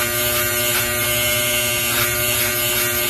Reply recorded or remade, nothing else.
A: remade